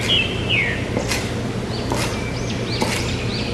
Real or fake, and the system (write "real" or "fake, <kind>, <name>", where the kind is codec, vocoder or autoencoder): real